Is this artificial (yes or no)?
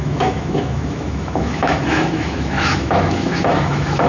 yes